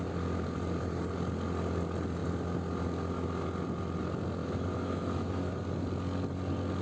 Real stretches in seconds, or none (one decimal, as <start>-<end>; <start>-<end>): 0.0-4.4; 5.6-6.8